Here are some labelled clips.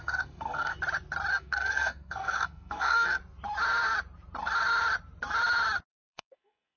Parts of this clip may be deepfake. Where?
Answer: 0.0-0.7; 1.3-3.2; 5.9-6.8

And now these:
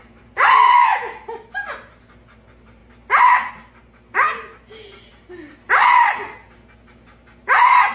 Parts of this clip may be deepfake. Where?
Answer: none

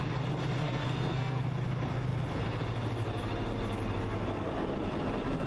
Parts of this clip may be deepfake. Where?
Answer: 0.6-1.4

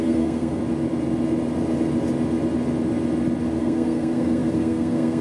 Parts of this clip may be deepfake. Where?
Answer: 0.0-0.6; 3.6-5.2

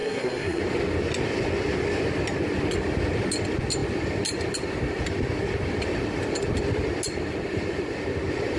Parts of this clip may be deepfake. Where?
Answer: 0.0-0.6

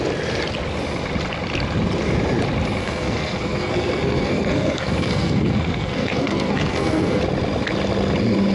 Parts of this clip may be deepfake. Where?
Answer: 2.8-7.2

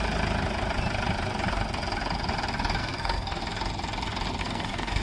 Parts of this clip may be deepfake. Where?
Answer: 2.8-3.4; 4.4-5.0